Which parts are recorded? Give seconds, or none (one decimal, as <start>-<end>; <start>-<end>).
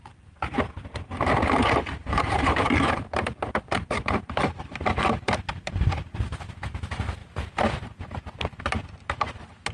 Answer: 0.0-2.0; 5.3-9.7